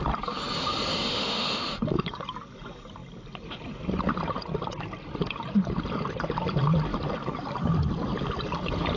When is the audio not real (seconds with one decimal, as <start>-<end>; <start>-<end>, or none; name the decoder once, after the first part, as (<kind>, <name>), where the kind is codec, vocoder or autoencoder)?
1.1-1.7 (autoencoder, DAC-VAE)